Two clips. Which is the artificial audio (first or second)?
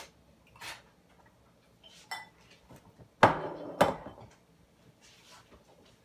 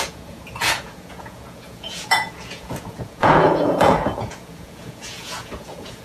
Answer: second